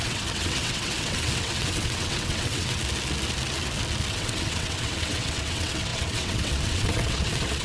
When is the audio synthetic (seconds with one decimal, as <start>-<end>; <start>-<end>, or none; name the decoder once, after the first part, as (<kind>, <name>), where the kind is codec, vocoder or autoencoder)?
0.0-2.8 (vocoder, WaveNeXt); 4.1-7.6